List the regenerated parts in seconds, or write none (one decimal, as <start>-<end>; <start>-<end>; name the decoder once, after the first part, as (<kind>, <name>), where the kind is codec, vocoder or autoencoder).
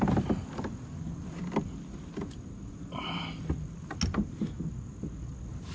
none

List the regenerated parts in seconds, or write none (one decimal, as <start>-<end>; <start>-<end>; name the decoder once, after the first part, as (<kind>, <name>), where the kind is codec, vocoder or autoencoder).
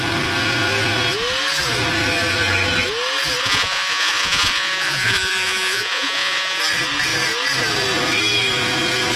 3.4-6.6 (vocoder, Vocos)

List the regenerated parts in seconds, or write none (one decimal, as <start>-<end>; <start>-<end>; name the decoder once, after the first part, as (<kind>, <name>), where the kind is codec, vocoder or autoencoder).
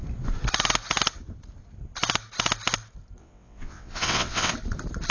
3.2-4.5 (vocoder, WaveNeXt)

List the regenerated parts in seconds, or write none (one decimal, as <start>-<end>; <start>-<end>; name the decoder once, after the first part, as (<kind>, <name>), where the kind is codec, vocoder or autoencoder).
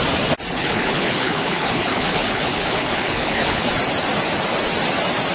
0.5-3.7 (codec, HILCodec)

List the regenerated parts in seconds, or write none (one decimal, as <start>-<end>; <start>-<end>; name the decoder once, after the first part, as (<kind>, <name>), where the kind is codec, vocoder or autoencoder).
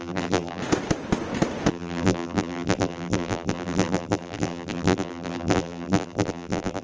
0.0-0.6 (vocoder, BigVGAN v2); 1.7-6.8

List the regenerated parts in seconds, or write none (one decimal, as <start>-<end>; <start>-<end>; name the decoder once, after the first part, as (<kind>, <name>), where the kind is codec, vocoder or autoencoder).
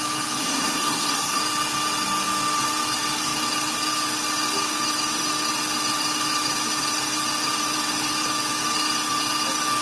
0.4-1.4 (codec, SNAC)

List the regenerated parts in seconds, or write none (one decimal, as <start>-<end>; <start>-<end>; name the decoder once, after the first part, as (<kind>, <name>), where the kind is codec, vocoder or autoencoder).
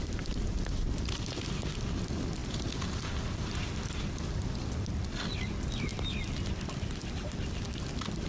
none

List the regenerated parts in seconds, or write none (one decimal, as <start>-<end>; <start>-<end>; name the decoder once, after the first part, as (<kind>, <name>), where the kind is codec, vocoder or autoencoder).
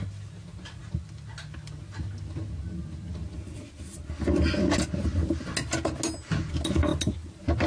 6.9-7.7 (vocoder, BigVGAN v2)